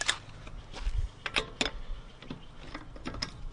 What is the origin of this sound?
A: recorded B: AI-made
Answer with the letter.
A